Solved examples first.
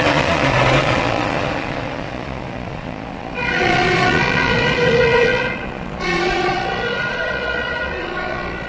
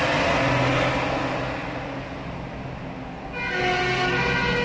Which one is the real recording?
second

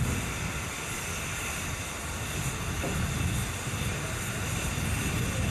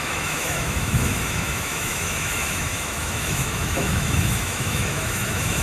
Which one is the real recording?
first